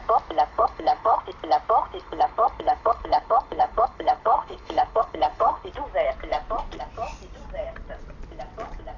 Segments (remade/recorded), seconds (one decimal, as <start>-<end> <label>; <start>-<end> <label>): 0.0-0.5 recorded; 0.5-1.2 remade; 1.2-2.0 recorded; 2.0-5.7 remade; 5.7-9.0 recorded